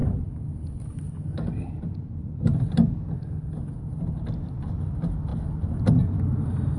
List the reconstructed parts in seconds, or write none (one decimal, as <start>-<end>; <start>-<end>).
none